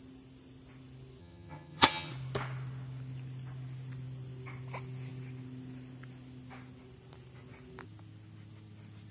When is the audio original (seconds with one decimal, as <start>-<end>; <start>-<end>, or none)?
0.0-1.2; 2.1-9.1